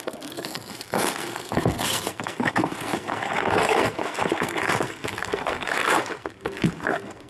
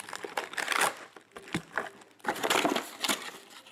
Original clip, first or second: second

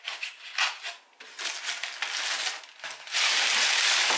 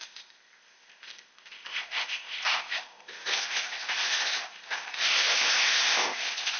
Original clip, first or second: first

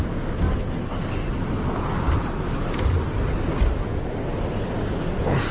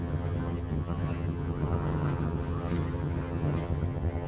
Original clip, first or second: first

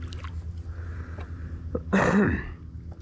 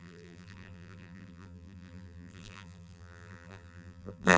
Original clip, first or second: first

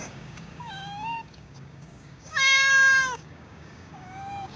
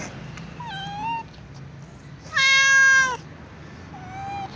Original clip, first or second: second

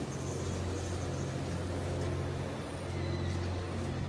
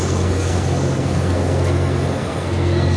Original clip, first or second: first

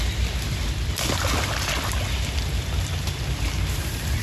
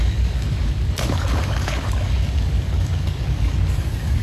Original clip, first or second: first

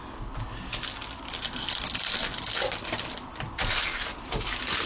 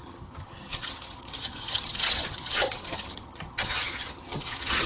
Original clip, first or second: first